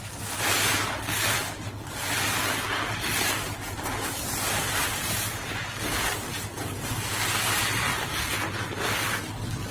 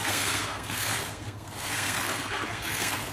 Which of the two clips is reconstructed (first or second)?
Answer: second